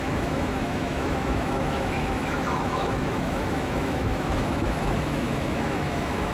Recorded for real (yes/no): no